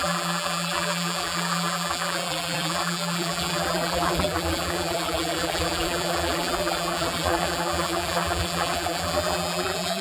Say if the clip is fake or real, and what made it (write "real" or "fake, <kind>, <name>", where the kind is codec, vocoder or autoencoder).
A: fake, vocoder, BigVGAN v2